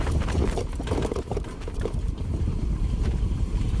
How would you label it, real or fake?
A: fake